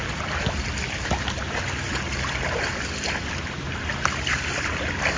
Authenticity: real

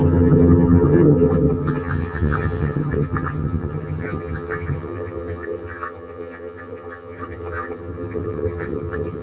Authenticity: fake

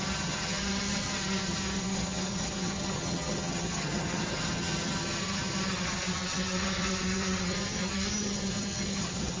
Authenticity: fake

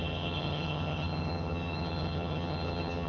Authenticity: fake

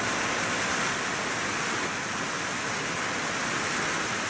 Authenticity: real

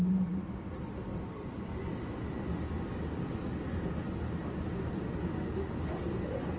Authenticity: real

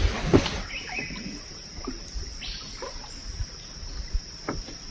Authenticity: real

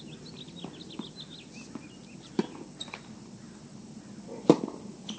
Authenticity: real